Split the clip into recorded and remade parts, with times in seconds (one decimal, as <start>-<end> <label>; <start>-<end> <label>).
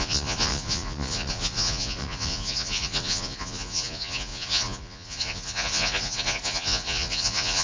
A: 0.0-7.6 remade